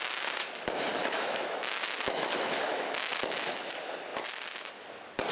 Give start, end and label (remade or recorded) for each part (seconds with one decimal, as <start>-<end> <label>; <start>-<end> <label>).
0.0-0.9 recorded; 0.9-3.5 remade; 3.5-5.3 recorded